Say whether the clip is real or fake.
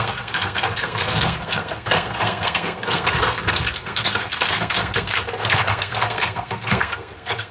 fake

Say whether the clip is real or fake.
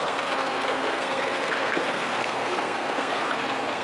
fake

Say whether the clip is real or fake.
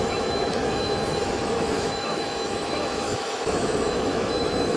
fake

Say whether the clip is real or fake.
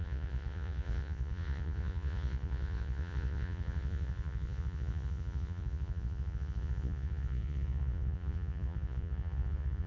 fake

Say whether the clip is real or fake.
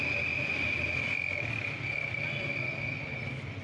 real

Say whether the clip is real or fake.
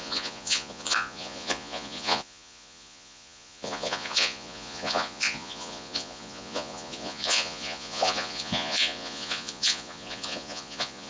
fake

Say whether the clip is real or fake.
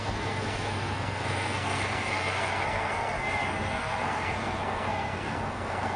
fake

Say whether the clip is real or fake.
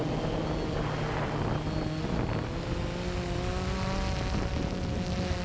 real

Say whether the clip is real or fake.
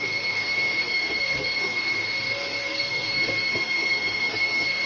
fake